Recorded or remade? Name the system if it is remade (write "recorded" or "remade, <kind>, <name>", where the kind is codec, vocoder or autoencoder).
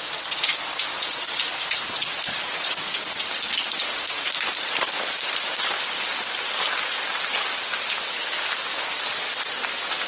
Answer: recorded